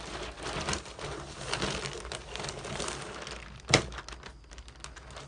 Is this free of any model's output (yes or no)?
yes